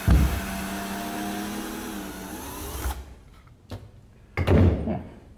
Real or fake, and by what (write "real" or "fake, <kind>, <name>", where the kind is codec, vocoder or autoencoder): real